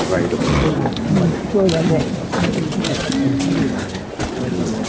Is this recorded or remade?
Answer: recorded